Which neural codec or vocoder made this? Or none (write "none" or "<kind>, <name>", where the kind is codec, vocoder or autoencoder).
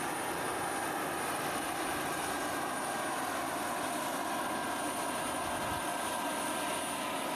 none